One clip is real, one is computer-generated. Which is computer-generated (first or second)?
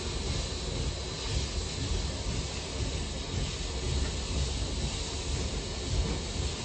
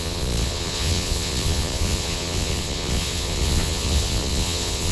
second